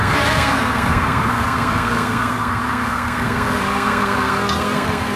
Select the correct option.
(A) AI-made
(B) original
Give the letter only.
A